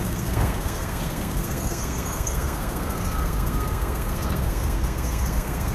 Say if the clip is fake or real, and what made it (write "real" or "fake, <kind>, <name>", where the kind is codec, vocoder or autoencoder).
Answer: fake, codec, SNAC